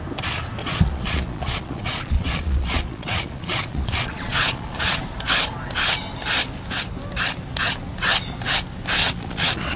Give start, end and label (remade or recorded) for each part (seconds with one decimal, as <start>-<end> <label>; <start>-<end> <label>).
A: 0.0-0.6 recorded; 0.6-5.0 remade; 5.0-9.0 recorded; 9.0-9.8 remade